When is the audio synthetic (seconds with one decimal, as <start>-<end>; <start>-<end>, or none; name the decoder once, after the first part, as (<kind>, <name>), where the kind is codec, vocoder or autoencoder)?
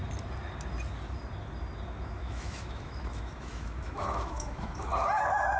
2.0-4.9 (autoencoder, DAC-VAE)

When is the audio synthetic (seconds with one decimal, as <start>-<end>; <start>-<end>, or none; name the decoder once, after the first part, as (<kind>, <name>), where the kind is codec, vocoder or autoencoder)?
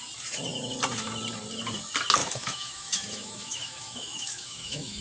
2.2-5.0 (autoencoder, DAC-VAE)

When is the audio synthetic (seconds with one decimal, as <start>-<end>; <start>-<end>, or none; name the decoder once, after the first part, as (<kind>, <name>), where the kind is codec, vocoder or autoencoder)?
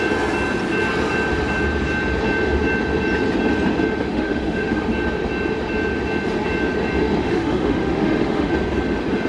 4.1-4.8 (autoencoder, DAC-VAE); 7.2-8.5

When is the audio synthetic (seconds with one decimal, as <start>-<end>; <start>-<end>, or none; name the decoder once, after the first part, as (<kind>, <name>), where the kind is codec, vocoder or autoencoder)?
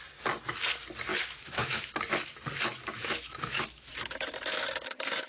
1.1-1.9 (autoencoder, DAC-VAE); 3.0-5.3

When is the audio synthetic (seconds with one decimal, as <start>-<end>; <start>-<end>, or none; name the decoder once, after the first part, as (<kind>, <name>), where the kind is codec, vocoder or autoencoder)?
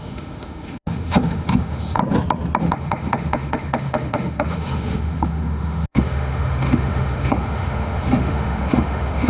0.0-2.0 (autoencoder, DAC-VAE); 2.6-9.3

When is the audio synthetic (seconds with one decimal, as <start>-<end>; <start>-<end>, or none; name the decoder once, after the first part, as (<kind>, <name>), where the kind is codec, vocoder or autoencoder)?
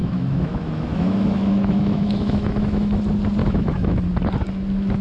0.0-3.0 (autoencoder, DAC-VAE); 3.4-4.0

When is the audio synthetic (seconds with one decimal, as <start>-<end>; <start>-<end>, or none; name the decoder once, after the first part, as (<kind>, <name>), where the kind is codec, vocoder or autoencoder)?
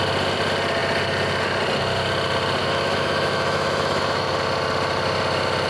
2.6-4.3 (autoencoder, DAC-VAE)